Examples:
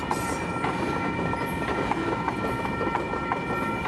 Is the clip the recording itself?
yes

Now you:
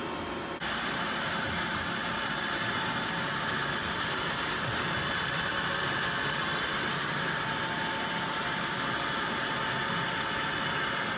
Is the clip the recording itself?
yes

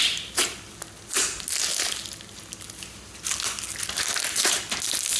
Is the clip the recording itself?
yes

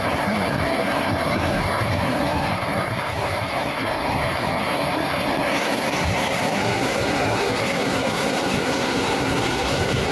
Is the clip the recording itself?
no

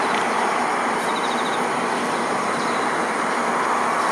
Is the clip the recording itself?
yes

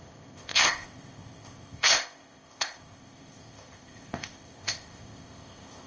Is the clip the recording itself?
no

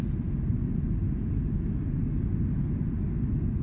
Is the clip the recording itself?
yes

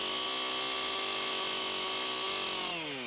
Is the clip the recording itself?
yes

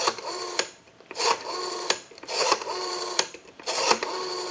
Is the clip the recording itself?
no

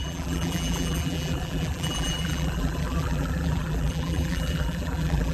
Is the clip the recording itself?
no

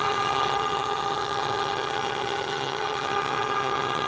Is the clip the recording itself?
no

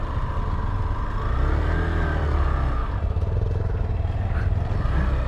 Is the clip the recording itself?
yes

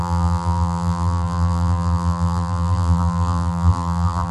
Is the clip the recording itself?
no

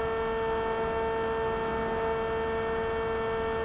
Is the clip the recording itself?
yes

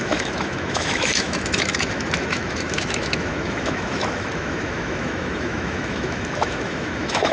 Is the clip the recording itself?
no